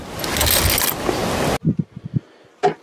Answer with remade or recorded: recorded